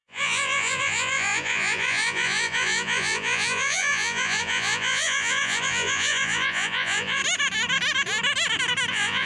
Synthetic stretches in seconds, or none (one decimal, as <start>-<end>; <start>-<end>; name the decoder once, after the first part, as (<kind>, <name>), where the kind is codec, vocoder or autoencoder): 0.0-7.2 (vocoder, Vocos); 8.9-9.3

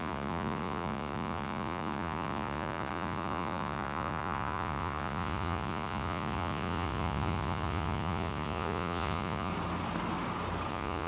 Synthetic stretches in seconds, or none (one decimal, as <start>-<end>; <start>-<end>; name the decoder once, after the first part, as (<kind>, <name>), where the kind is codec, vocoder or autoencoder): 0.0-9.5 (vocoder, Vocos); 10.7-11.1

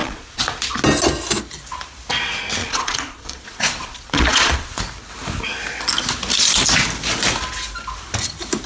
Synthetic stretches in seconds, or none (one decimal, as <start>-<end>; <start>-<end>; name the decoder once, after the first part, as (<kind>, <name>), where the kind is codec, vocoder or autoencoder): 0.0-0.8 (vocoder, Vocos); 2.6-4.8

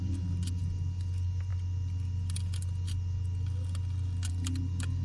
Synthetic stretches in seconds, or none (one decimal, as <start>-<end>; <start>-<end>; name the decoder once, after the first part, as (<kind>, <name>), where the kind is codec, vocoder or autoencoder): none

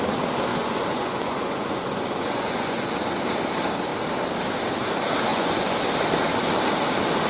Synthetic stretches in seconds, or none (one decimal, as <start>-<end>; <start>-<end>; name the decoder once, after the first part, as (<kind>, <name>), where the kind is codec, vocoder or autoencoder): 0.5-2.9 (vocoder, Vocos); 5.3-5.8